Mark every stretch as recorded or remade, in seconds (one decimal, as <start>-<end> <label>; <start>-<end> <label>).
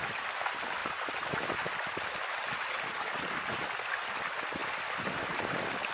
0.0-5.9 recorded